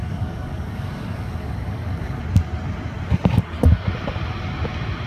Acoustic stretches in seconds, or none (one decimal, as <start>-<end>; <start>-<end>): 2.2-5.1